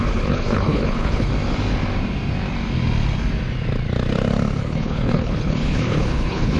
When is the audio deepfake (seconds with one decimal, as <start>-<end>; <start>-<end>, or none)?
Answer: 0.0-1.3; 4.6-6.6